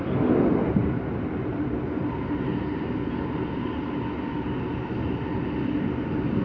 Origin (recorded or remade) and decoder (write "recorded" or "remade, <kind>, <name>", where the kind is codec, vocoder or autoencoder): recorded